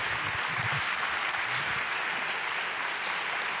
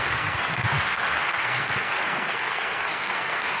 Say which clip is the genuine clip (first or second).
first